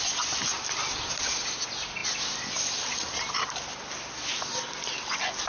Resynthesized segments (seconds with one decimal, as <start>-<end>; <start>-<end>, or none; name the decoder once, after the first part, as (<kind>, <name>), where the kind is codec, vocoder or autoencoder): none